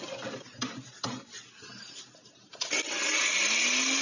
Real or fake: real